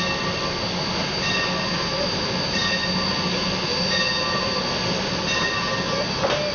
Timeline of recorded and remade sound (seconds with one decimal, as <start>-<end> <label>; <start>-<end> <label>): 0.0-6.5 recorded